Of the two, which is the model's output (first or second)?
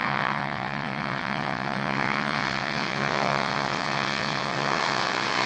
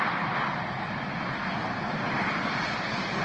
first